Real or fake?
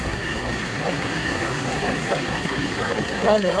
fake